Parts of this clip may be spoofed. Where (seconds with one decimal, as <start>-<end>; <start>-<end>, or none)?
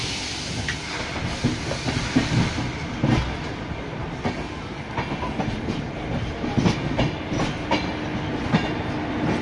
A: none